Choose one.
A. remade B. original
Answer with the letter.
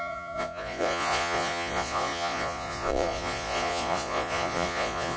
A